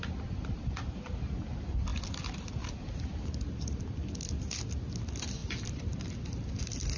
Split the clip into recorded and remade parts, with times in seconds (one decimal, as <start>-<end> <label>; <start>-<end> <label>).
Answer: 0.0-7.0 recorded